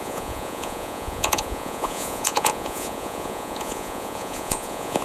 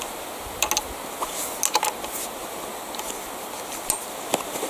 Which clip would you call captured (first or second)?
second